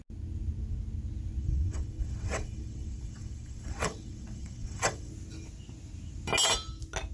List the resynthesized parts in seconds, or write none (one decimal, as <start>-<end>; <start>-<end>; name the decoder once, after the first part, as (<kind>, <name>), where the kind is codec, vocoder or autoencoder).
1.4-5.1 (vocoder, WaveNeXt)